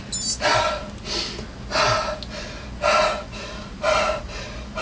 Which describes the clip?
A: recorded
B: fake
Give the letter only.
A